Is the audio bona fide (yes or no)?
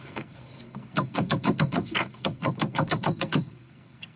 no